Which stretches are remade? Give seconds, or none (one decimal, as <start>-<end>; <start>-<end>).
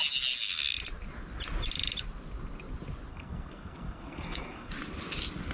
3.1-4.7